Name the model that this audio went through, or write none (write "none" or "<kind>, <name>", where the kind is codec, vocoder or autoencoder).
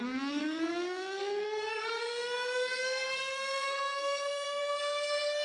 codec, SNAC